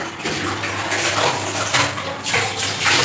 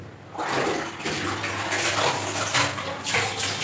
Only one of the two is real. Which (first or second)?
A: second